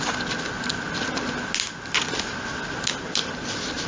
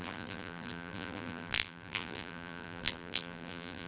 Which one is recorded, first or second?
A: first